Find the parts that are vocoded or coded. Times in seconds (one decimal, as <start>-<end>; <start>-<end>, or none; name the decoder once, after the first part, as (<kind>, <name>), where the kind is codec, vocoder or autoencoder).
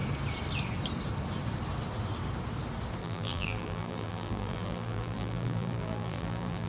3.0-6.7 (vocoder, BigVGAN v2)